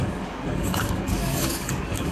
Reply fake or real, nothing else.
fake